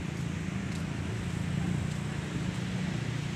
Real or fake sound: real